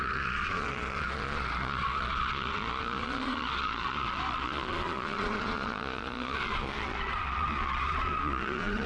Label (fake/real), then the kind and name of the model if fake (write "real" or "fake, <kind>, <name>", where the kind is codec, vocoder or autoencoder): fake, vocoder, Vocos